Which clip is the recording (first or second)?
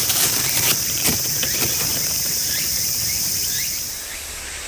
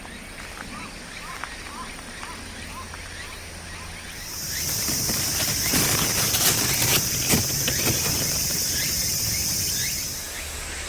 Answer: second